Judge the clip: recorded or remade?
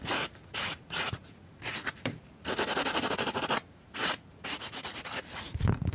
remade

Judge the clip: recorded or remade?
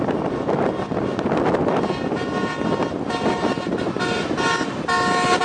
recorded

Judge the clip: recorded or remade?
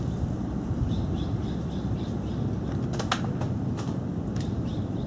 recorded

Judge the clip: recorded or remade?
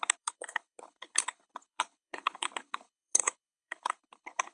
remade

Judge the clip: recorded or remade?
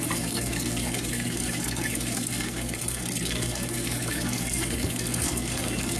remade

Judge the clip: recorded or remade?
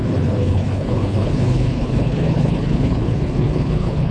remade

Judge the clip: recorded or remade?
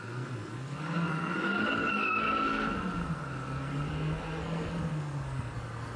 remade